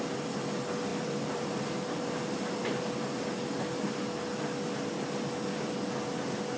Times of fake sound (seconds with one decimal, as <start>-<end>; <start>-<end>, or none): 0.9-2.9